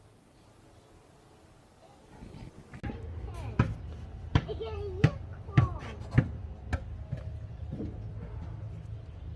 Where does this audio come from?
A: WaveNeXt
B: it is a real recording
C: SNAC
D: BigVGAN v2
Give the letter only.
B